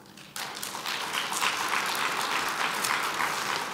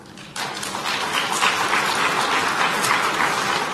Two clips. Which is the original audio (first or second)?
first